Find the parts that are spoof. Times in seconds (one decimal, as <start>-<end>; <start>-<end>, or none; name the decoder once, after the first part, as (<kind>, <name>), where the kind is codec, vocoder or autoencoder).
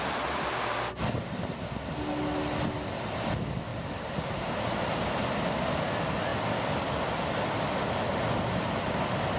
3.7-5.0 (vocoder, BigVGAN v2)